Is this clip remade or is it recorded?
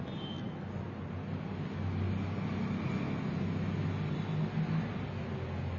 recorded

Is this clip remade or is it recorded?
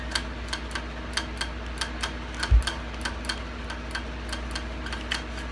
recorded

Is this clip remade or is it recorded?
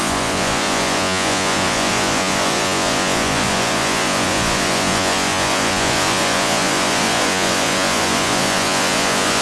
remade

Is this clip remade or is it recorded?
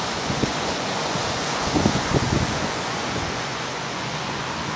remade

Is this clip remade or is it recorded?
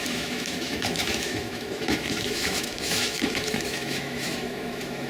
remade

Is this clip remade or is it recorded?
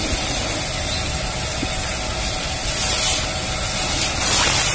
recorded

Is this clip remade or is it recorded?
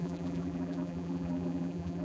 remade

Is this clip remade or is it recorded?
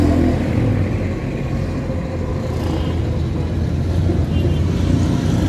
recorded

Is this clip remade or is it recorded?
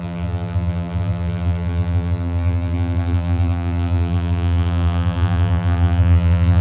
remade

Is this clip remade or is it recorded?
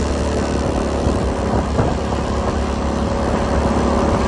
recorded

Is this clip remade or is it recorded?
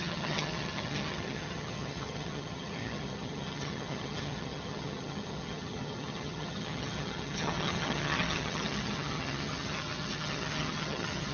remade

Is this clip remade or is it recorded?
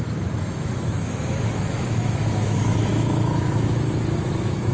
remade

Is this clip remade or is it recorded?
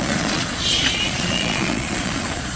remade